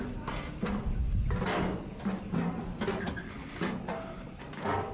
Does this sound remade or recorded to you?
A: recorded